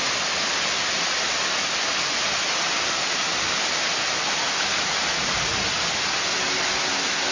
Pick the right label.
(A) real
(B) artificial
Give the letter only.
A